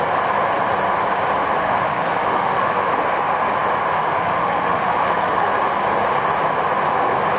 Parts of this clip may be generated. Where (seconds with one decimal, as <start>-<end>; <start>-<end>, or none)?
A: 1.6-2.9; 4.2-5.5